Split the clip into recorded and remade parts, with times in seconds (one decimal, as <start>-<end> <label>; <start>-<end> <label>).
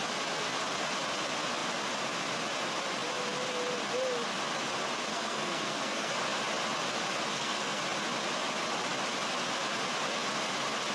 0.0-5.1 recorded; 5.1-6.1 remade; 6.1-7.3 recorded; 7.3-7.8 remade; 7.8-10.9 recorded